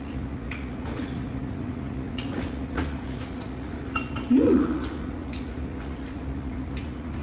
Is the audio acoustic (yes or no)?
no